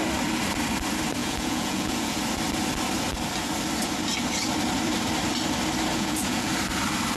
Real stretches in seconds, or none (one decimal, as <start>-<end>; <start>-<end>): 0.0-1.2; 2.2-5.9; 6.5-7.2